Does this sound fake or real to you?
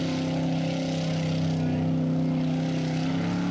real